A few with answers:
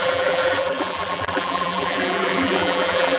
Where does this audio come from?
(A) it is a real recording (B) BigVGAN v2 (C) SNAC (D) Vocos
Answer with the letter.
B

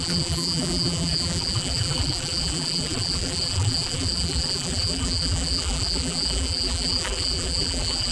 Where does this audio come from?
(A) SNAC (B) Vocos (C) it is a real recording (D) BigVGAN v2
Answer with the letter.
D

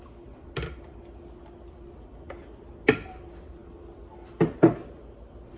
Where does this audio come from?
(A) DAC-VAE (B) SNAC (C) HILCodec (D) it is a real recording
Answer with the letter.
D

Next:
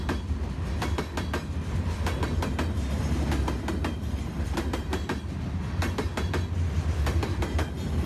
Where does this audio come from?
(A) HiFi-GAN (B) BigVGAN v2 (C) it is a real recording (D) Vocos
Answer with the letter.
C